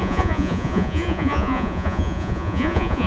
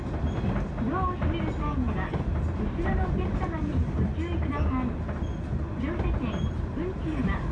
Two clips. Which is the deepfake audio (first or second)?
first